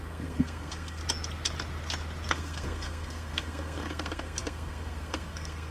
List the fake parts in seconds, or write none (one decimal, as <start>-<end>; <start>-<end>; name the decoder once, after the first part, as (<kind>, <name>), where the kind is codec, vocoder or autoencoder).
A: 0.0-1.0 (codec, SNAC); 2.3-5.7